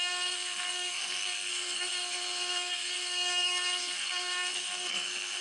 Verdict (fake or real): fake